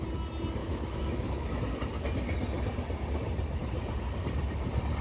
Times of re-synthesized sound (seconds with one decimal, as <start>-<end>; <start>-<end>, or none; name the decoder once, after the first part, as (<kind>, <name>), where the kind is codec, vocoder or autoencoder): 0.6-1.6 (autoencoder, DAC-VAE)